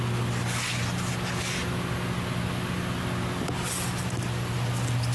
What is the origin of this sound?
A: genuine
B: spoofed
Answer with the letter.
A